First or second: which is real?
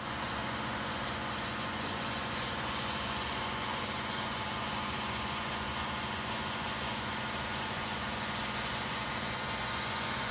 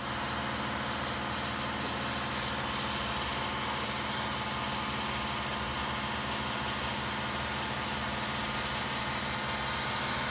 second